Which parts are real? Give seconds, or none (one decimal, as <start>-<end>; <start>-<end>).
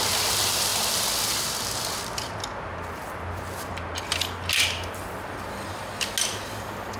0.0-7.0